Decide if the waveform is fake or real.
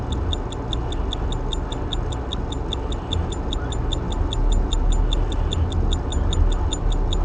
real